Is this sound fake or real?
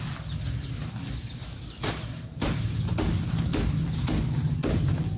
real